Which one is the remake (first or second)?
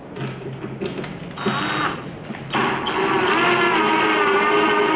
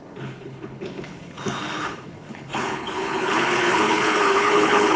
second